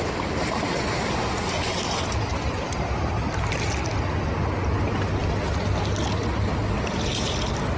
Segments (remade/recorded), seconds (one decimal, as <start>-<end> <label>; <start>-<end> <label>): 0.0-2.3 recorded; 2.3-3.0 remade; 3.0-7.8 recorded